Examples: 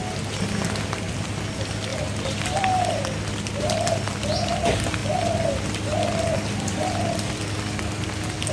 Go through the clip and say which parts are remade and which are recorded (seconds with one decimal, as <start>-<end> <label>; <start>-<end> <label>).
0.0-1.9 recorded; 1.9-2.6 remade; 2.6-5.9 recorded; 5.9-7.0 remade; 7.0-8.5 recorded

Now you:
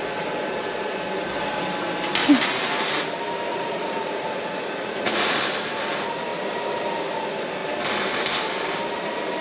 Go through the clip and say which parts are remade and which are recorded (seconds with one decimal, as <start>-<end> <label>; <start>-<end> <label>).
0.0-3.5 recorded; 3.5-5.4 remade; 5.4-9.4 recorded

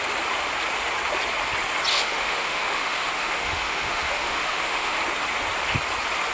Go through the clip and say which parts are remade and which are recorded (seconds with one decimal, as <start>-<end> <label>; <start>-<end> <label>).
0.0-1.9 recorded; 1.9-5.0 remade; 5.0-6.3 recorded

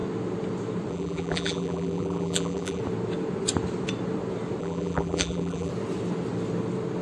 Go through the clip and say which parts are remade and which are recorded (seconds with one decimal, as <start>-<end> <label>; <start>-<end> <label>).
0.0-0.9 recorded; 0.9-2.8 remade; 2.8-4.6 recorded; 4.6-5.7 remade; 5.7-7.0 recorded

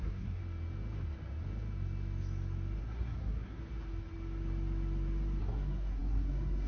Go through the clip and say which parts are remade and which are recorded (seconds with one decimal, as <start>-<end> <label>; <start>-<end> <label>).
0.0-0.4 remade; 0.4-2.8 recorded; 2.8-3.6 remade; 3.6-5.4 recorded; 5.4-6.7 remade